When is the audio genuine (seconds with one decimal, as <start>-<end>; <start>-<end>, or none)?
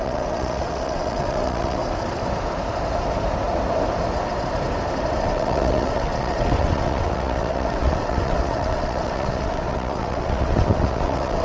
1.8-5.2